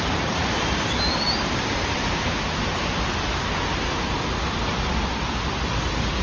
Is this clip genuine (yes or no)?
yes